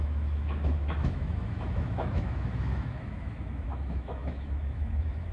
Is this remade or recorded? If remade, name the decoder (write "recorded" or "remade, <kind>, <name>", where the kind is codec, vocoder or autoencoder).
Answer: remade, autoencoder, DAC-VAE